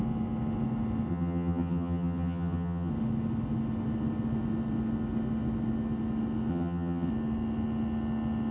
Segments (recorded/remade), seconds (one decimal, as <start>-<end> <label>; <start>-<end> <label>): 0.0-1.1 recorded; 1.1-2.9 remade; 2.9-6.5 recorded; 6.5-7.1 remade; 7.1-8.5 recorded